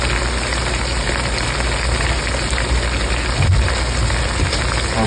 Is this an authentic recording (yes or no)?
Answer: yes